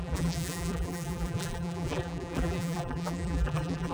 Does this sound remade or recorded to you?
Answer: remade